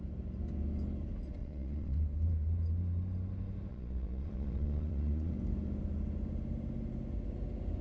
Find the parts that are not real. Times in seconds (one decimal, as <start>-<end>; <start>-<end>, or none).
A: 1.4-2.0; 3.7-5.3